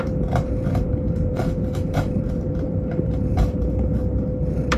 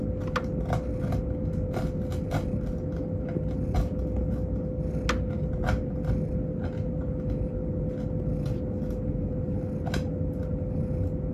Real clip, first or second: second